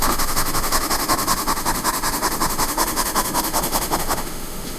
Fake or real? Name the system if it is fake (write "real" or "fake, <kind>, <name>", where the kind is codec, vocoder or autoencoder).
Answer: fake, autoencoder, DAC-VAE